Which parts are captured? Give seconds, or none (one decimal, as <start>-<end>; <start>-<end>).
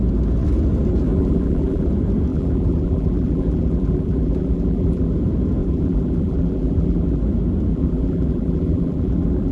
0.0-1.1; 1.9-2.3; 5.1-5.6; 7.2-7.7